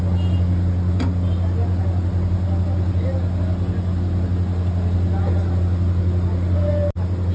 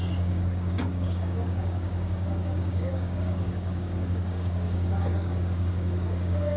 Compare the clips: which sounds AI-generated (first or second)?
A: second